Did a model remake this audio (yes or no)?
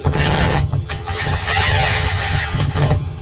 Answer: yes